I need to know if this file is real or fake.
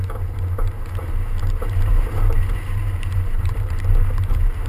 fake